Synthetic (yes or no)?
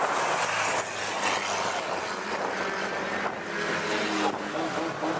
no